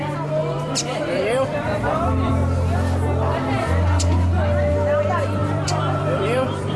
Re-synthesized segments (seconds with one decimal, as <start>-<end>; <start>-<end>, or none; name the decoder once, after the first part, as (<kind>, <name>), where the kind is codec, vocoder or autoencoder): 0.4-2.3 (vocoder, BigVGAN v2); 5.4-6.8